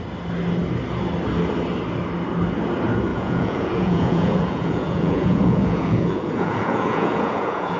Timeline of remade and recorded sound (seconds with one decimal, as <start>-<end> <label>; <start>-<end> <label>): 0.0-3.1 recorded; 3.1-7.8 remade